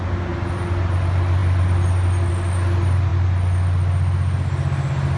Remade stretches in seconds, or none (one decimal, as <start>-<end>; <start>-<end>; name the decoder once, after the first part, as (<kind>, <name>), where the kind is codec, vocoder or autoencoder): none